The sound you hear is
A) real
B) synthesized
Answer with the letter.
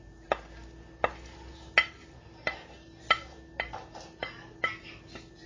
A